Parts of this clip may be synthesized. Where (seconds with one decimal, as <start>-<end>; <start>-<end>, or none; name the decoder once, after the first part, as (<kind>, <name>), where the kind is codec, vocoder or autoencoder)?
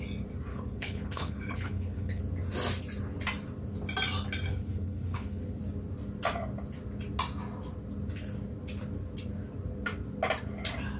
0.5-2.2 (codec, HILCodec); 4.5-5.6